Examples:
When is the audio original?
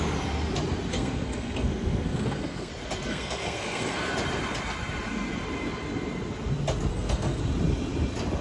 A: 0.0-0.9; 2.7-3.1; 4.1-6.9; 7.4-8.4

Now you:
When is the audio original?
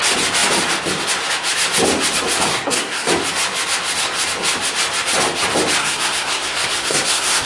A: 0.0-2.5; 3.1-5.8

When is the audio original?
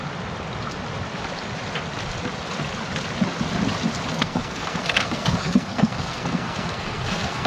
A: 0.0-4.1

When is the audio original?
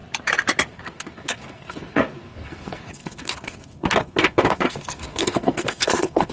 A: 0.0-0.7